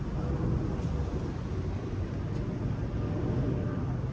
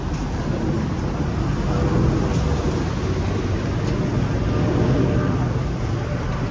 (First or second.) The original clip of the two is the second